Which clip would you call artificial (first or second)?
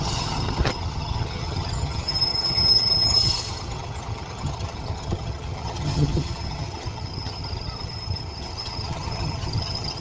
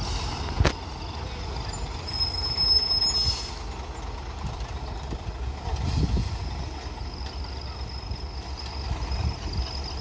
first